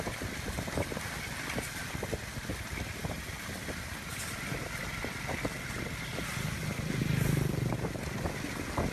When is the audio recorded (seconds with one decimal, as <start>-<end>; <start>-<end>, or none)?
0.0-8.9